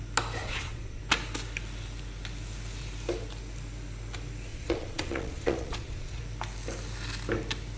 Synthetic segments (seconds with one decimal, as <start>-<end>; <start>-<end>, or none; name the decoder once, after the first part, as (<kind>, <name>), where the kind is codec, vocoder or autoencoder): 0.4-1.0 (vocoder, Vocos); 4.5-6.2